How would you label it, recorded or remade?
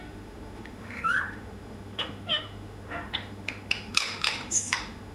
remade